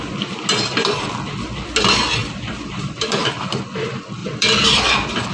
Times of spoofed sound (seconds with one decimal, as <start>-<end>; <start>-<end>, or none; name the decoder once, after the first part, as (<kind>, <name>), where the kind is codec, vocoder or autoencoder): 2.2-3.6 (vocoder, BigVGAN v2); 4.2-4.8